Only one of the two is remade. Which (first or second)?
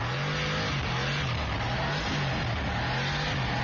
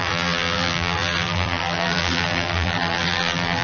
second